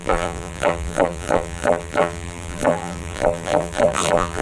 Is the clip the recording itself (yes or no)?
no